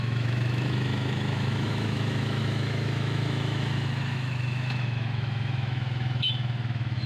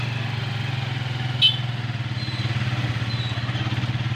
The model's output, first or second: first